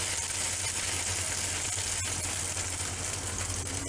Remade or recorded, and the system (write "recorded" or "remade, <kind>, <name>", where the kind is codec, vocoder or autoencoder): recorded